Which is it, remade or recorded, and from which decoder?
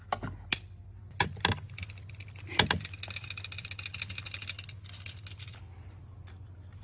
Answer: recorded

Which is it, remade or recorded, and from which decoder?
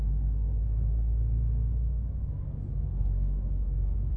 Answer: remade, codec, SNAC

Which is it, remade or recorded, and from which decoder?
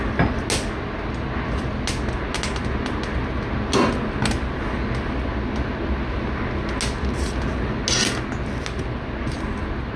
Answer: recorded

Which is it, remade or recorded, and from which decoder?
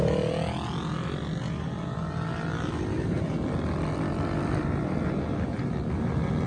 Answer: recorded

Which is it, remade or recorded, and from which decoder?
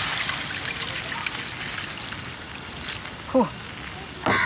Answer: recorded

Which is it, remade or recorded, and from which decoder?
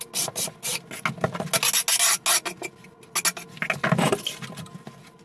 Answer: recorded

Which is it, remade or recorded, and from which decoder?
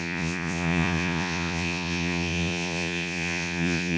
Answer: remade, vocoder, Vocos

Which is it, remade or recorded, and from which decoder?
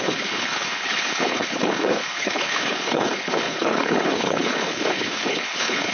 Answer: remade, codec, HILCodec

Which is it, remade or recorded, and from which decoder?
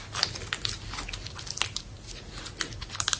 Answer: recorded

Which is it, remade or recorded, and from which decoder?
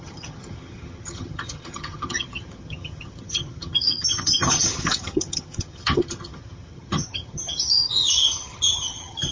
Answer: remade, vocoder, HiFi-GAN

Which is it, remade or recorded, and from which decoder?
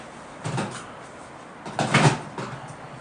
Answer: recorded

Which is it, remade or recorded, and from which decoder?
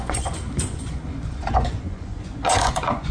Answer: remade, vocoder, Vocos